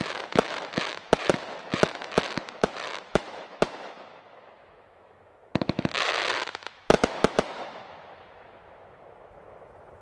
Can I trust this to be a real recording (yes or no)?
no